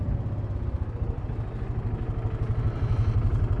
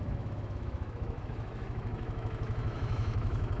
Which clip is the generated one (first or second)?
second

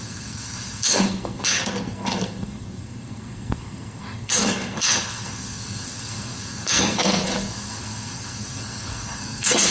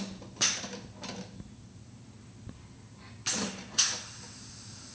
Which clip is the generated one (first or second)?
first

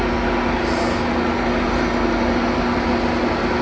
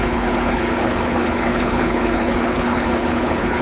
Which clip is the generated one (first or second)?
second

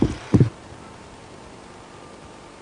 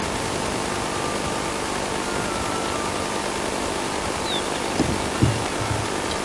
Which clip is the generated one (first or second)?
first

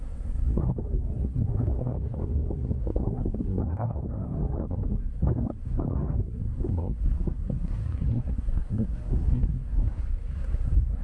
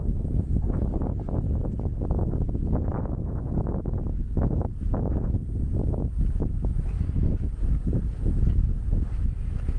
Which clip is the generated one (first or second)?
first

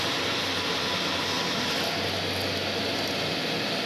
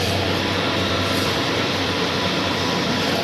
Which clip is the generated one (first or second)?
second